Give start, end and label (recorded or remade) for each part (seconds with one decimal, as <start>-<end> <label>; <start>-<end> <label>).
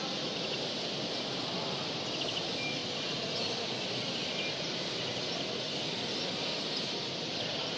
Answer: 0.0-7.8 recorded